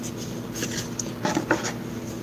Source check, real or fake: real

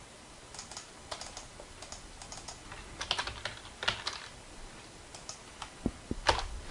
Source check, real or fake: real